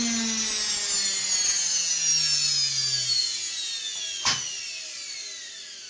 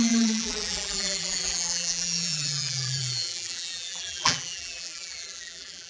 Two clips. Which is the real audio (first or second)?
first